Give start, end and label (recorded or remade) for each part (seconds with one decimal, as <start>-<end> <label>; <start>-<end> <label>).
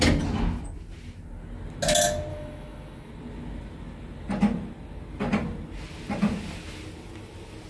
0.0-2.3 recorded; 2.3-3.1 remade; 3.1-7.7 recorded